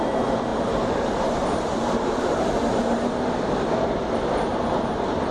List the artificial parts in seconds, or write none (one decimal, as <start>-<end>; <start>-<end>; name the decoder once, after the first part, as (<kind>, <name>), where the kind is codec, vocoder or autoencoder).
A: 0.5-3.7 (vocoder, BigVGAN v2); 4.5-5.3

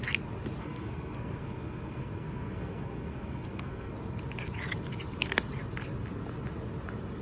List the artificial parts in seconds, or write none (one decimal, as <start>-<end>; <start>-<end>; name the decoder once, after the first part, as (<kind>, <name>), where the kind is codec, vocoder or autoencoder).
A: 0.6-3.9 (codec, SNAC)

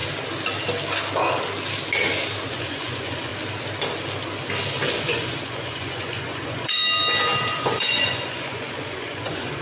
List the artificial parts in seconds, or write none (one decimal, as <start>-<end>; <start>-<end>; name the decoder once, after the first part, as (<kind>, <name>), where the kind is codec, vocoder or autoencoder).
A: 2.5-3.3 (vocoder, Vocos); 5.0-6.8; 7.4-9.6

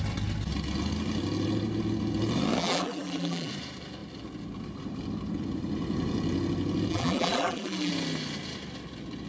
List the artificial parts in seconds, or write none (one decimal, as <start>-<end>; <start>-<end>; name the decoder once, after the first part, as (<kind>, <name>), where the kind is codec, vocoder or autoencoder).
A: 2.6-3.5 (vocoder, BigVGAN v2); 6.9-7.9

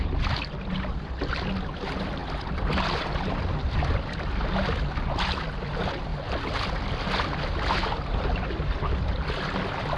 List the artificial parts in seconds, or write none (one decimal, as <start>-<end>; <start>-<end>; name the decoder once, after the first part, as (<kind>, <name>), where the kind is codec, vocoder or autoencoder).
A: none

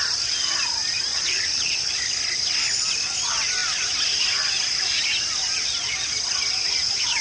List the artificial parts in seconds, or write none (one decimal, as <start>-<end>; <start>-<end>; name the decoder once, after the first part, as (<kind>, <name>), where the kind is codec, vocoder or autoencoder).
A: 1.1-1.9 (vocoder, Vocos)

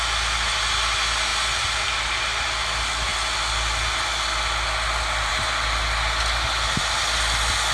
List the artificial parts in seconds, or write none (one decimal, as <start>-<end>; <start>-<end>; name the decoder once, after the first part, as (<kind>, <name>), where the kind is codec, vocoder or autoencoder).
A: none